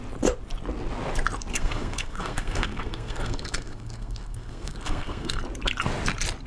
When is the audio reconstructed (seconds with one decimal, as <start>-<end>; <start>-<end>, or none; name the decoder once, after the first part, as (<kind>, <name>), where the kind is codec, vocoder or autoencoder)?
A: 1.5-5.4 (codec, SNAC)